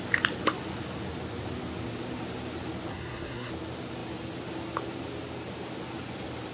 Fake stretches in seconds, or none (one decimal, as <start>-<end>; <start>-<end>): 2.9-3.5